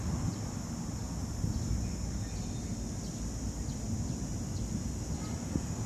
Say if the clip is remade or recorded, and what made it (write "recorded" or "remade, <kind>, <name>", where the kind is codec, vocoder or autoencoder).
recorded